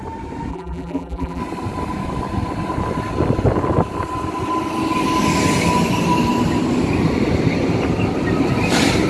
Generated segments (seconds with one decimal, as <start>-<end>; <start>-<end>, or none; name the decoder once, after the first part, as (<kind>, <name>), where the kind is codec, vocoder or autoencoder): 0.5-1.4 (vocoder, BigVGAN v2)